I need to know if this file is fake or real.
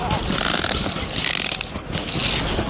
real